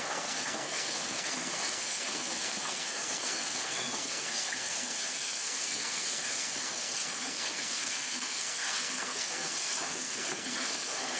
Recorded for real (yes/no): no